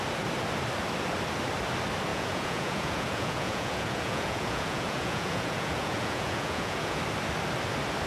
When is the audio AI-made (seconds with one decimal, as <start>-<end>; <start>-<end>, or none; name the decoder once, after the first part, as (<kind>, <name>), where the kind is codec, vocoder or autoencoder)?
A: 2.1-7.0 (vocoder, Vocos)